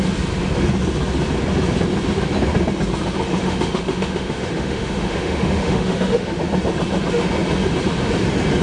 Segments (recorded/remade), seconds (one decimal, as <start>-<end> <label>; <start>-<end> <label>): 0.0-3.4 recorded; 3.4-6.4 remade; 6.4-8.6 recorded